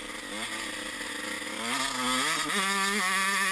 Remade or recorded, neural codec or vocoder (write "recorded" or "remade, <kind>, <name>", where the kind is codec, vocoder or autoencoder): recorded